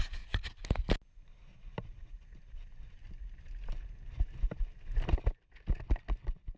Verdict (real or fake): real